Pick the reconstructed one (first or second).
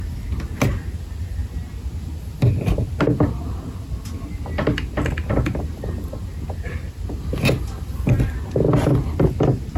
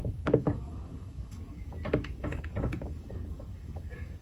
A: second